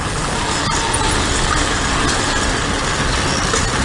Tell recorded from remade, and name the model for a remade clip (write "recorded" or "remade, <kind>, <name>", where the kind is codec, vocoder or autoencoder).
recorded